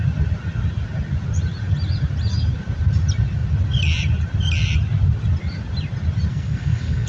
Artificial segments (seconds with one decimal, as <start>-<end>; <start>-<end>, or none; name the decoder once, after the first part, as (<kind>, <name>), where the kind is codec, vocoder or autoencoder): 6.3-7.1 (codec, SNAC)